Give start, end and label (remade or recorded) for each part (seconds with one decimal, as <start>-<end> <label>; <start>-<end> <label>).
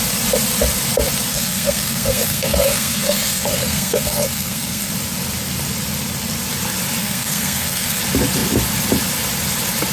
0.0-1.3 recorded; 1.3-4.9 remade; 4.9-7.0 recorded; 7.0-8.0 remade; 8.0-9.9 recorded